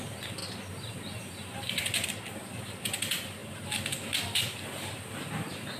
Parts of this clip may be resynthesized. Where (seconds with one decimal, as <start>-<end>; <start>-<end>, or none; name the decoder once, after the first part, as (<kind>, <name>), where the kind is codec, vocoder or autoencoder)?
none